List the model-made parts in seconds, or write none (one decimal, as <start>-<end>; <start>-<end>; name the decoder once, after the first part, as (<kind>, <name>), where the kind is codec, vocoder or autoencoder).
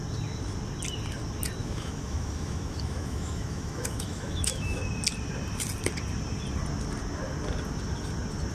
1.6-4.8 (autoencoder, DAC-VAE)